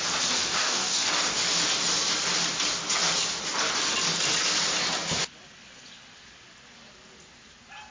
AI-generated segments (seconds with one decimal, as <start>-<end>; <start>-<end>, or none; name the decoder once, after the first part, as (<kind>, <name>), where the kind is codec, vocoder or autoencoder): 0.6-1.2 (codec, DAC)